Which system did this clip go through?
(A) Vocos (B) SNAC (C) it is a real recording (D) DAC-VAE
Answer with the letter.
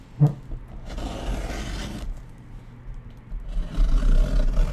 C